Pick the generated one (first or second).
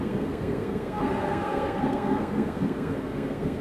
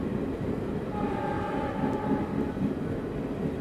first